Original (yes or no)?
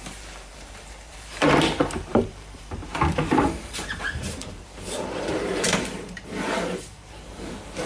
no